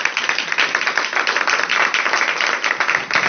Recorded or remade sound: recorded